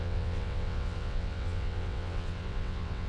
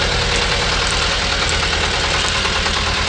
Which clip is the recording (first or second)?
second